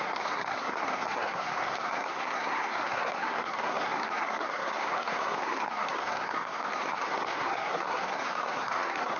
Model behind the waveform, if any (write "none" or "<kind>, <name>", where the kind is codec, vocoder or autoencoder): codec, SNAC